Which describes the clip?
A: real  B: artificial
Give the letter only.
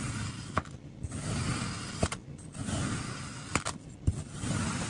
A